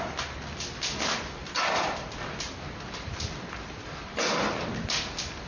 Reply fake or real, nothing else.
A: real